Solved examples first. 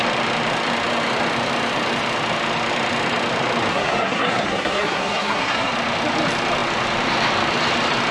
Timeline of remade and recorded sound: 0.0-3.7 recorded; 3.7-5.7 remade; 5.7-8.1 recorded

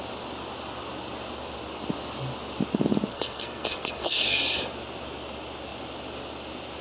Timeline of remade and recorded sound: 0.0-3.1 recorded; 3.1-4.4 remade; 4.4-6.8 recorded

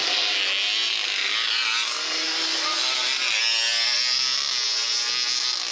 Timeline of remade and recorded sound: 0.0-5.7 recorded